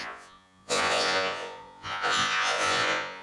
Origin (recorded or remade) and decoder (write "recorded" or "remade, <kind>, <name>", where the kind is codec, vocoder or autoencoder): remade, vocoder, Vocos